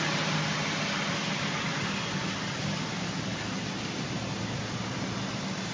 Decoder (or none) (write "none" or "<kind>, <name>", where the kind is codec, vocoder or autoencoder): none